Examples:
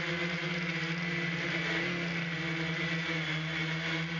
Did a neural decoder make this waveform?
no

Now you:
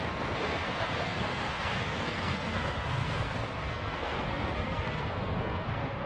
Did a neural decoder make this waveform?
yes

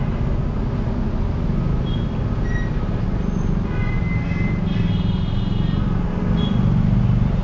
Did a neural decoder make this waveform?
no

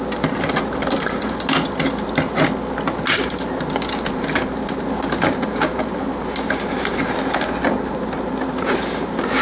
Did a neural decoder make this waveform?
no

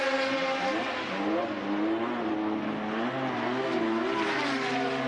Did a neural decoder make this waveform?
no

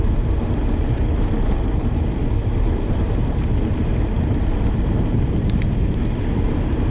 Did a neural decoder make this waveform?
yes